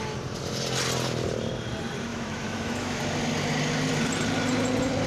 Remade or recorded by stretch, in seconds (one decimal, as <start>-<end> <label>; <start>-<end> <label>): 0.0-2.1 recorded; 2.1-3.0 remade; 3.0-5.1 recorded